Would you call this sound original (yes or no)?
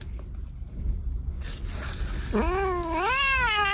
yes